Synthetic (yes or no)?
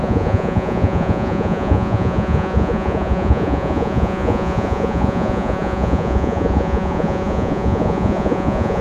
yes